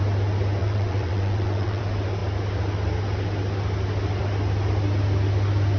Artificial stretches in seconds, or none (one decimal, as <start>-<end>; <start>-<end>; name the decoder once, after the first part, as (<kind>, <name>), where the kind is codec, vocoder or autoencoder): 0.6-1.8 (vocoder, WaveNeXt)